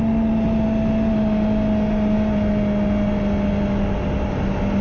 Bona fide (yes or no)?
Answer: yes